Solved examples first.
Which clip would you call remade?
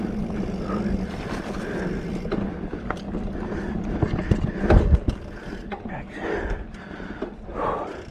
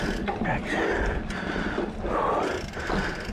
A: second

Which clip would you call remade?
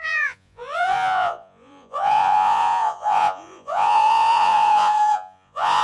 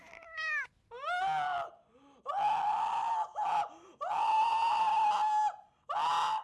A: first